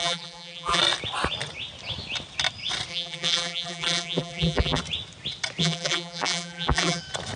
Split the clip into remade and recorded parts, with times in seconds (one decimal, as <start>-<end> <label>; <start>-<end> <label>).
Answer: 0.0-0.8 remade; 0.8-2.9 recorded; 2.9-4.8 remade; 4.8-5.6 recorded; 5.6-7.0 remade; 7.0-7.4 recorded